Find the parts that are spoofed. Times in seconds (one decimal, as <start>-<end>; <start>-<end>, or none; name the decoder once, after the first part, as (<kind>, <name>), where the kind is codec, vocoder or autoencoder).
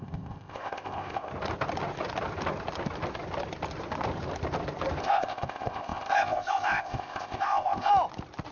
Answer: 0.0-1.3 (codec, ZipCodec); 5.0-7.9